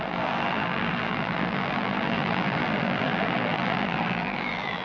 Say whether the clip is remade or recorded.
remade